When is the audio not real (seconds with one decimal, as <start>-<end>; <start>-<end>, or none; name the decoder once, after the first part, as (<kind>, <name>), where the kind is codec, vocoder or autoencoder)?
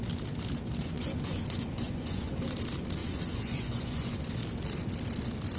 0.8-2.3 (vocoder, Vocos); 3.0-4.3